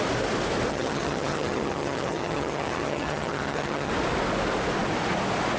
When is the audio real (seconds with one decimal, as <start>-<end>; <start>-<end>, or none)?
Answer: 0.0-0.7; 3.9-5.6